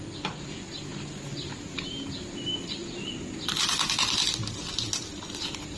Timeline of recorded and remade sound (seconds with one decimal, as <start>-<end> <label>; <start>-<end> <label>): 0.0-5.8 recorded